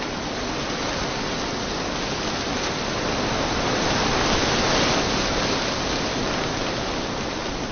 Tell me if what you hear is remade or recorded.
recorded